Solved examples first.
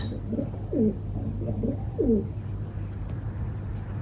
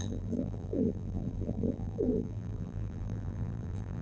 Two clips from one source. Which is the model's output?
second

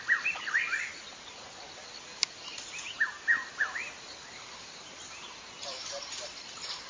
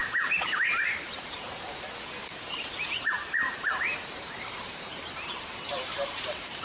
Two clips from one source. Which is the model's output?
second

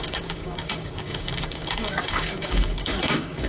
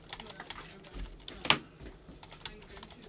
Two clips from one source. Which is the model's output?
first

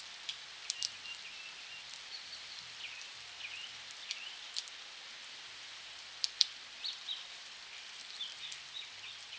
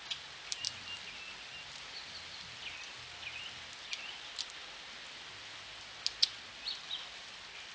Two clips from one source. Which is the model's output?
first